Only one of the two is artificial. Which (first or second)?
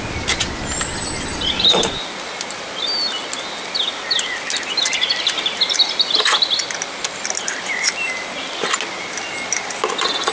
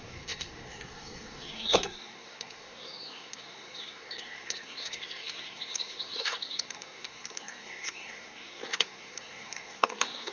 second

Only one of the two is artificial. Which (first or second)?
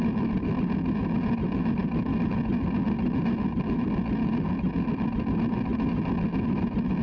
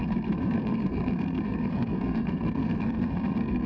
second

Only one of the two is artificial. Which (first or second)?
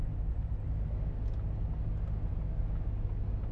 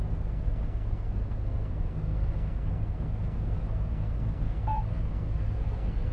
second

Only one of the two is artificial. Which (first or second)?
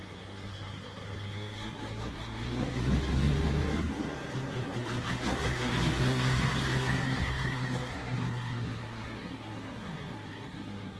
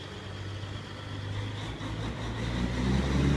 first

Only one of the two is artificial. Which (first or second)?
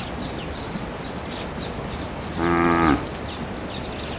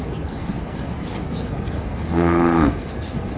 second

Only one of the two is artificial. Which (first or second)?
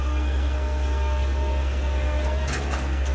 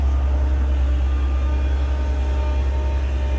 first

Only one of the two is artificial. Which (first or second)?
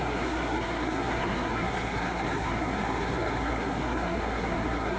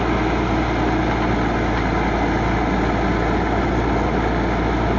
first